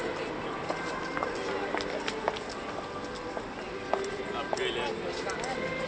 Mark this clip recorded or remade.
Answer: recorded